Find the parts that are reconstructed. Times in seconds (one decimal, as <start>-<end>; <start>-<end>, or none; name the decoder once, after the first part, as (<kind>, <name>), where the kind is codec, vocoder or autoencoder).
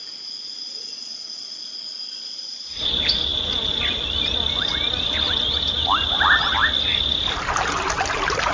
0.0-2.9 (vocoder, Vocos)